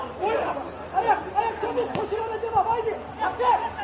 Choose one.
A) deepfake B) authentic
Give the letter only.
B